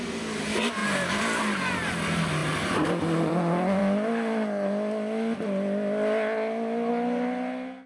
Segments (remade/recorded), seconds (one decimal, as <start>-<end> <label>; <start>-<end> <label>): 0.0-7.9 recorded